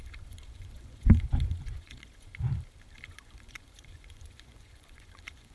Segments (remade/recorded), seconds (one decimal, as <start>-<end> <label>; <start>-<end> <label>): 0.0-2.3 remade; 2.3-3.0 recorded; 3.0-5.5 remade